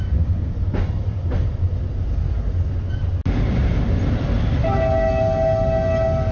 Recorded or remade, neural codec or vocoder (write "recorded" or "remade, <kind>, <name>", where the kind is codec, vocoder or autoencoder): recorded